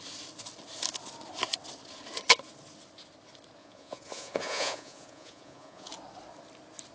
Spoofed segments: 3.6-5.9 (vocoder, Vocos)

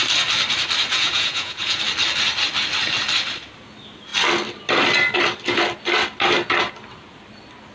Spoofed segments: 0.9-1.8 (vocoder, Vocos)

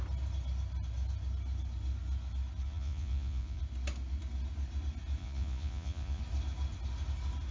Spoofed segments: 2.6-3.6 (vocoder, Vocos); 5.2-6.2